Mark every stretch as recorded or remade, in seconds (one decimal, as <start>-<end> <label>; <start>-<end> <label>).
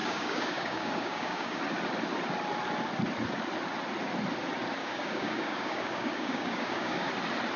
0.0-1.6 remade; 1.6-4.8 recorded; 4.8-7.1 remade; 7.1-7.6 recorded